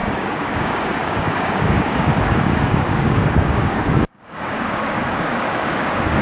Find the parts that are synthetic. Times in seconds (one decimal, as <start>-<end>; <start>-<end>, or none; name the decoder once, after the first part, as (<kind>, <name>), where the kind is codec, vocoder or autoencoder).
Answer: 0.0-6.2 (codec, DAC)